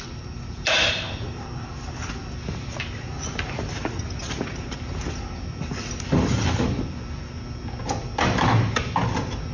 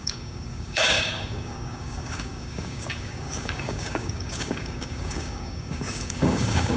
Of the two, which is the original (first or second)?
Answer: first